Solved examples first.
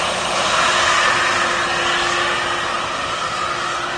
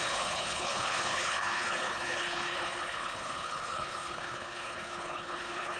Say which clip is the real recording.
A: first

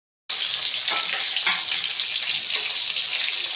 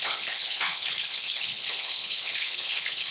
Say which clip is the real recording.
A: first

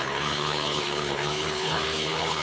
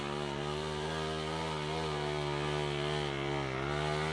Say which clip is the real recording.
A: second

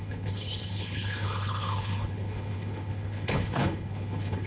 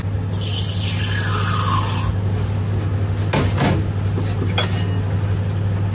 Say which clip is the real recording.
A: second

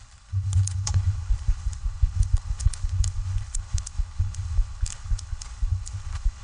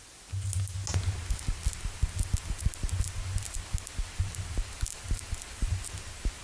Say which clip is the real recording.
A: second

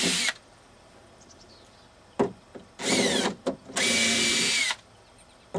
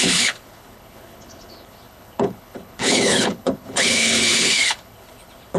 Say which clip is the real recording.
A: first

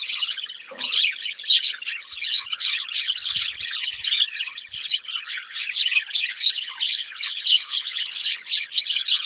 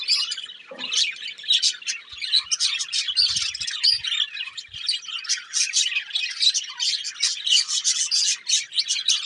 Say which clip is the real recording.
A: second